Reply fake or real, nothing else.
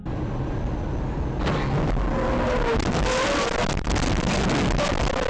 real